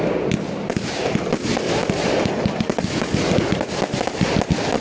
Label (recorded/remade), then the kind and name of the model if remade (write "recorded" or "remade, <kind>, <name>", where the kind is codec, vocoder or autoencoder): recorded